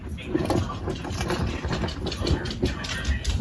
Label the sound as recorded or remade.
recorded